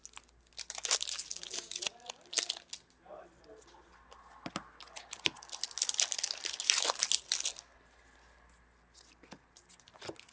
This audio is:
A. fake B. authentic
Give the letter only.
B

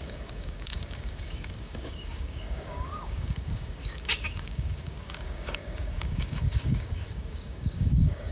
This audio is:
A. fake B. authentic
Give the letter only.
A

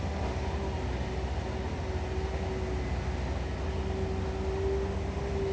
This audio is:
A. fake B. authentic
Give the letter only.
B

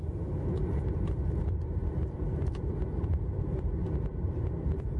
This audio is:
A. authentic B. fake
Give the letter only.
B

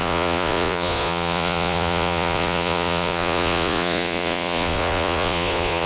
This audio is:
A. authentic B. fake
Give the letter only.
B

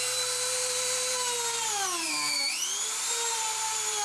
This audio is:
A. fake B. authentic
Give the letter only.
A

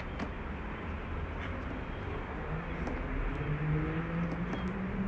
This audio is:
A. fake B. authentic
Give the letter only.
B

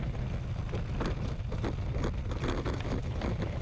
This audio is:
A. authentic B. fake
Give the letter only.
A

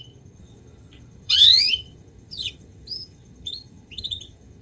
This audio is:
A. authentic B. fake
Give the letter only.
B